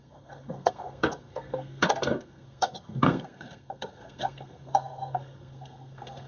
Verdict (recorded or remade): remade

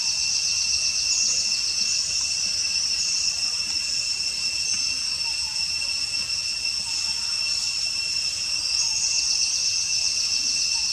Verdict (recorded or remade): recorded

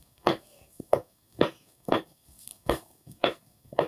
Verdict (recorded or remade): remade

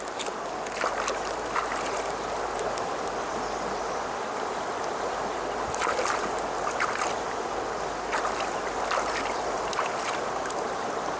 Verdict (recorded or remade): recorded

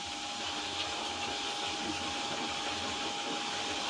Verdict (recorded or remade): recorded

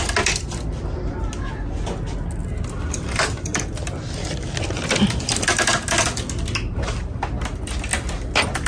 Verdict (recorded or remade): recorded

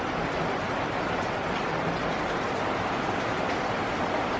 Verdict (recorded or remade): recorded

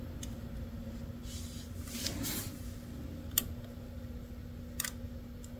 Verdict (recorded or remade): recorded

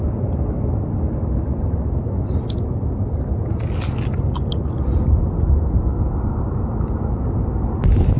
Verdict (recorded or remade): recorded